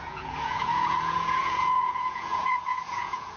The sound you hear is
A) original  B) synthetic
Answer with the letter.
B